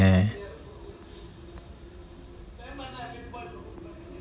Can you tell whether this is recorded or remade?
recorded